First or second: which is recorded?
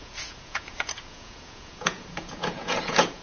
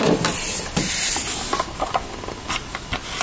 second